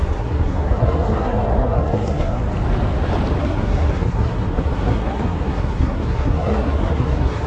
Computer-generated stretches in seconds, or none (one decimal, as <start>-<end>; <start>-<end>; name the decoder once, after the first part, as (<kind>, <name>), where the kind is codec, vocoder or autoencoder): 0.0-2.4 (codec, SNAC); 3.4-7.5